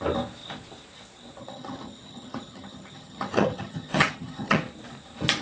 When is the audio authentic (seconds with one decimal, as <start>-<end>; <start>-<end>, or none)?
0.0-1.4; 4.6-5.4